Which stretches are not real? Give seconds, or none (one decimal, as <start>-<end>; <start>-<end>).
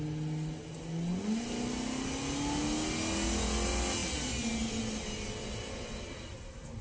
none